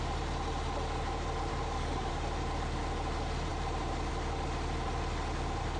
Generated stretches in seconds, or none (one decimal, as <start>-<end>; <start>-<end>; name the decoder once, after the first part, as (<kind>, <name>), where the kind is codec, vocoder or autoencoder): 1.5-2.1 (codec, DAC)